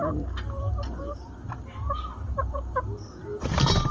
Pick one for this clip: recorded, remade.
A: recorded